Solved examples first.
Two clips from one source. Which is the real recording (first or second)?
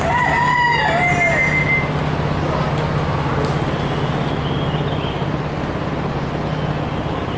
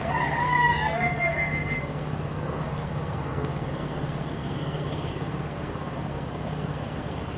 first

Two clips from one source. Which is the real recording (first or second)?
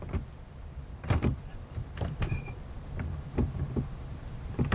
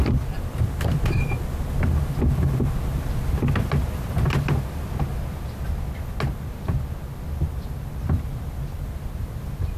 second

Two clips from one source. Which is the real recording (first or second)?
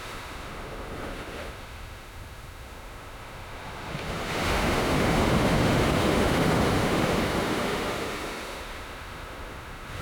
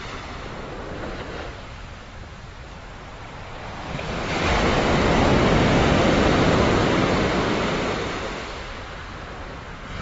second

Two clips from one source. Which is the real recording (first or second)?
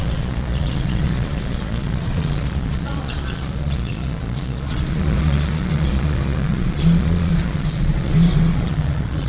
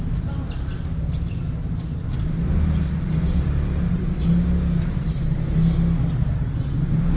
second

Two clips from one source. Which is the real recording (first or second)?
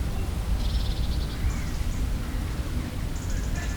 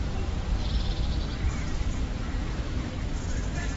first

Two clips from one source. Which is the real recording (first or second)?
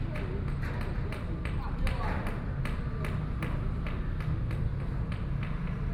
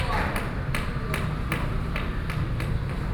first